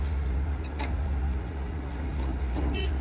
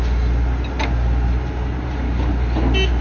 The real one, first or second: second